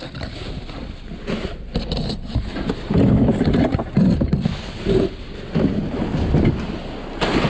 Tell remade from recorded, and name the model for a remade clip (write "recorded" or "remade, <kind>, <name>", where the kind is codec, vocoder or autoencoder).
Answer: recorded